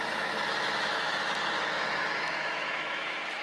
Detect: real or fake fake